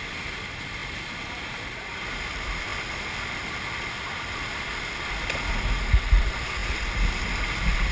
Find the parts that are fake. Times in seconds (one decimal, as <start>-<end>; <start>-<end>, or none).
none